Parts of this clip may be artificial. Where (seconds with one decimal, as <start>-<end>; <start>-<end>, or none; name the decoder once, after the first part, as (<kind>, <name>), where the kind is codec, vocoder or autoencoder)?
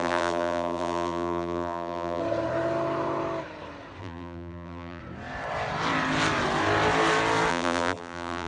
0.0-2.2 (vocoder, BigVGAN v2); 4.0-5.0; 7.5-8.5